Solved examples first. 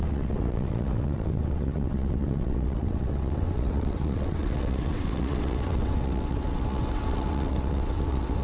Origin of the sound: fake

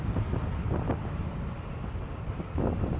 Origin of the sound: real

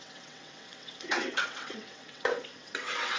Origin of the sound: fake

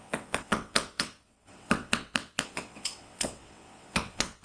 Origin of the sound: fake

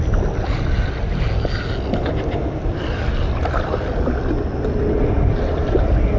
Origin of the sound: real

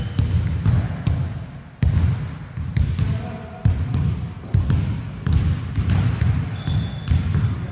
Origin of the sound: real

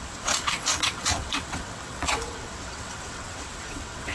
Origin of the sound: fake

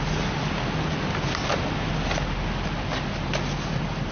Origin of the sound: real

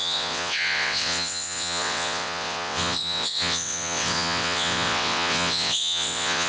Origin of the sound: fake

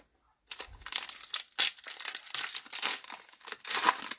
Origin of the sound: real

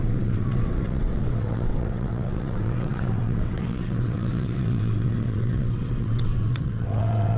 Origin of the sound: fake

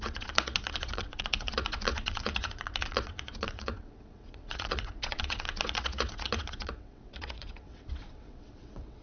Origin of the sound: fake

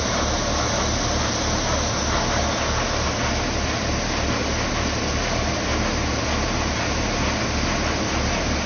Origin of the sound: real